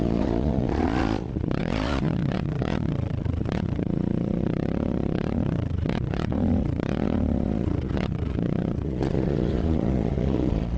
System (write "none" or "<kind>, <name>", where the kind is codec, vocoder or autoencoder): vocoder, Vocos